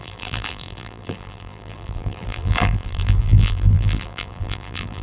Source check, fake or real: fake